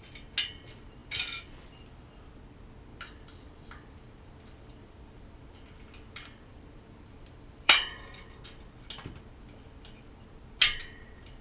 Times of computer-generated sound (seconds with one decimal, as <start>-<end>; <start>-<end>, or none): 2.9-5.5; 6.5-7.9